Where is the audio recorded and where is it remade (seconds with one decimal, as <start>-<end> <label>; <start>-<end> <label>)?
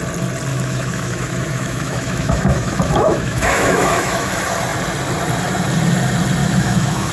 0.0-0.5 recorded; 0.5-4.3 remade; 4.3-6.4 recorded; 6.4-7.1 remade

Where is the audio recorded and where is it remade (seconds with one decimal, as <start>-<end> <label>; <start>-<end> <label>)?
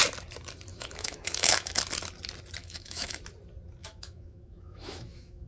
0.0-0.7 recorded; 0.7-1.8 remade; 1.8-2.6 recorded; 2.6-3.2 remade; 3.2-3.8 recorded; 3.8-5.5 remade